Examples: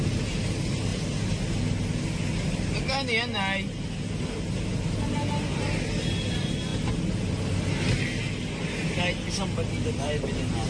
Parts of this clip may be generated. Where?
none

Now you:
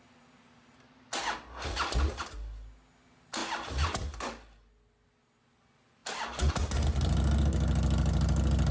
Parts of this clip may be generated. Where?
none